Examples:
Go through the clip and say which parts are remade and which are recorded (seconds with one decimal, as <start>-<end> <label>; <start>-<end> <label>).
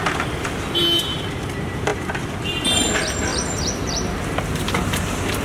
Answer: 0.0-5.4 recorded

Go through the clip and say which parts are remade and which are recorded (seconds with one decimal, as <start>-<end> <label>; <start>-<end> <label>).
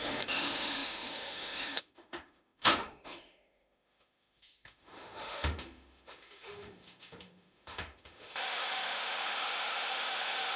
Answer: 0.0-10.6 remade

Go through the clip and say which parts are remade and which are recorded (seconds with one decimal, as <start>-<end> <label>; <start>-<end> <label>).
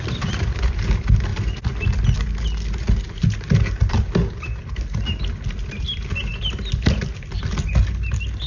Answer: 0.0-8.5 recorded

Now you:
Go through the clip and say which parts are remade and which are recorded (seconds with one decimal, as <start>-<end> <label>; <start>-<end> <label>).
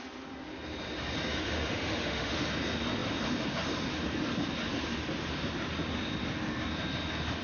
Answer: 0.0-1.3 recorded; 1.3-2.5 remade; 2.5-7.4 recorded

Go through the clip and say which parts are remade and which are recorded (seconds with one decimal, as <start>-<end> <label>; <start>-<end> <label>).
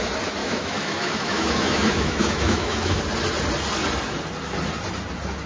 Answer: 0.0-0.4 recorded; 0.4-3.0 remade; 3.0-5.5 recorded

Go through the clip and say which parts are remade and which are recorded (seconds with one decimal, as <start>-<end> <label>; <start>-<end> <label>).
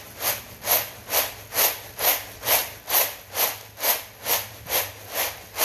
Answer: 0.0-5.6 recorded